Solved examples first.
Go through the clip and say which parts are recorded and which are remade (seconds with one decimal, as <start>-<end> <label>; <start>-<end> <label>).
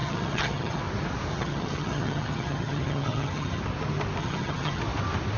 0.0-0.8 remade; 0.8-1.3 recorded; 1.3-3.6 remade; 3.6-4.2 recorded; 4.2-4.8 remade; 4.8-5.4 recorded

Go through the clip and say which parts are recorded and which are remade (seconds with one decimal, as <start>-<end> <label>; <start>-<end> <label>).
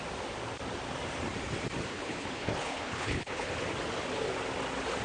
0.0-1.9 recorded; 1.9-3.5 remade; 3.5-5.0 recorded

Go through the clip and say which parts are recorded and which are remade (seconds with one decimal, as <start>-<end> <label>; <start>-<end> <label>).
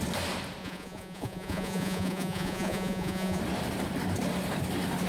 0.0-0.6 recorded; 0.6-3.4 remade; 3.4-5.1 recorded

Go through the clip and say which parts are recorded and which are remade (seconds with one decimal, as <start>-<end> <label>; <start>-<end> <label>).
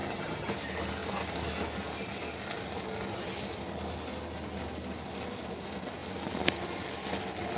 0.0-0.5 remade; 0.5-7.6 recorded